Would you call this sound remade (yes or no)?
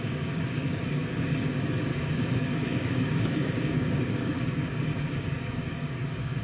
yes